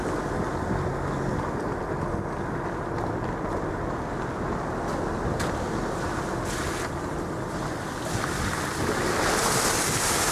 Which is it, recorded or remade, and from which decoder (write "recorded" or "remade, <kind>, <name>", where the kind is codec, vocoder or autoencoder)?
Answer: recorded